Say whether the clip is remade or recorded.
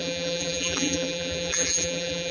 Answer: remade